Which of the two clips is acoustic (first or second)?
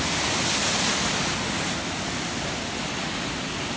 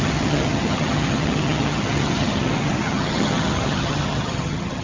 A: first